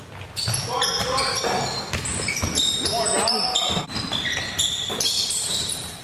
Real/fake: real